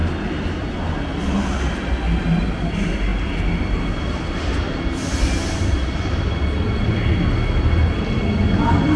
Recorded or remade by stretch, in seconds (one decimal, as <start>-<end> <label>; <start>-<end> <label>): 0.0-9.0 recorded

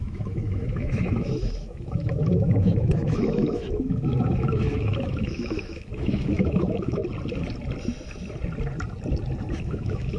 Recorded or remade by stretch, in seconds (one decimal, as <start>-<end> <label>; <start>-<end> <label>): 0.0-7.0 remade; 7.0-9.6 recorded; 9.6-10.2 remade